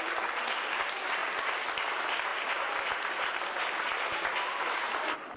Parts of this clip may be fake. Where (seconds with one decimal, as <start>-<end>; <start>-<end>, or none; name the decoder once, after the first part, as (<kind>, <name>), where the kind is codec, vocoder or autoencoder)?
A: none